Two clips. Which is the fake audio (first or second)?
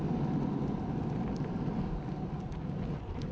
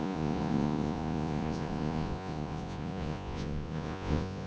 second